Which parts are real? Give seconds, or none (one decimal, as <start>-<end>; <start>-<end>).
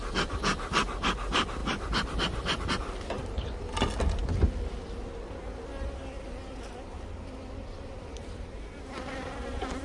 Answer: 4.2-7.6